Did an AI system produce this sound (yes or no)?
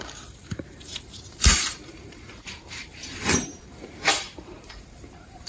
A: yes